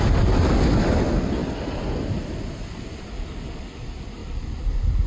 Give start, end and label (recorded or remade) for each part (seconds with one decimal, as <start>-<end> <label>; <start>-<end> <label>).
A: 0.0-4.2 recorded; 4.2-5.1 remade